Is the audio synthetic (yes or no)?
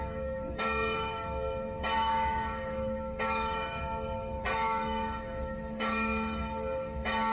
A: yes